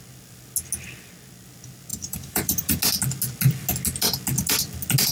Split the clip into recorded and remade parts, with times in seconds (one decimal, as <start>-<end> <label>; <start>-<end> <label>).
0.0-1.9 recorded; 1.9-2.8 remade; 2.8-5.1 recorded